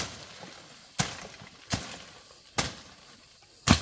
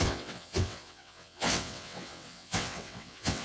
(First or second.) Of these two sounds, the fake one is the second